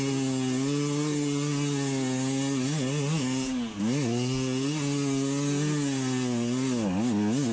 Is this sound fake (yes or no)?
no